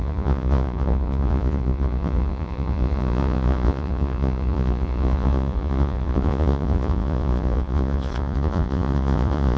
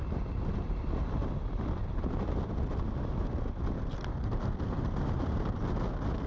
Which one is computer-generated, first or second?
first